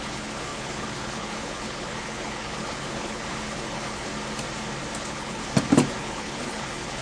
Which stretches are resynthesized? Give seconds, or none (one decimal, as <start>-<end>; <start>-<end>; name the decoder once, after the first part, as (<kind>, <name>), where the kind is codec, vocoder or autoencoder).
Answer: 0.0-4.1 (codec, HILCodec); 5.0-5.4; 6.0-7.0

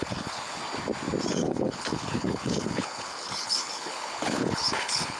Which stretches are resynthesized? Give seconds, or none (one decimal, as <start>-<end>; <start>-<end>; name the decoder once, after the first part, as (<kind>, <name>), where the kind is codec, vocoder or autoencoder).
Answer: 0.0-0.6 (codec, HILCodec); 1.3-5.2

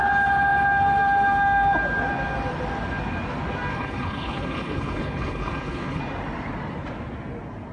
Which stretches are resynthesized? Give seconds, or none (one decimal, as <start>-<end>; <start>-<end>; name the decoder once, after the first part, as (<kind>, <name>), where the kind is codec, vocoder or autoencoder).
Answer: 3.7-6.0 (codec, HILCodec)

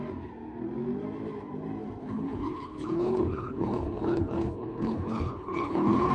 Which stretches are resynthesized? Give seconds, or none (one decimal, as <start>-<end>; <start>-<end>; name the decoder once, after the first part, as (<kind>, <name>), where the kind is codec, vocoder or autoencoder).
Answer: 2.0-6.1 (codec, HILCodec)

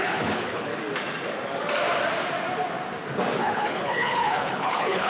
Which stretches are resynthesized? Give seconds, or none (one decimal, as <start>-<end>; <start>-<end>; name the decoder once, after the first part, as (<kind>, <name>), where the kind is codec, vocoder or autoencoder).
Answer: 0.0-0.7 (codec, HILCodec); 3.4-5.1

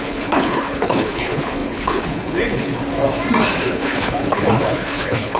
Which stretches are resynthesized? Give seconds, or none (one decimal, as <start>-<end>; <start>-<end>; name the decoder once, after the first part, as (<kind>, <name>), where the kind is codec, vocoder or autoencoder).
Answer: 0.0-2.8 (codec, HILCodec); 3.6-5.4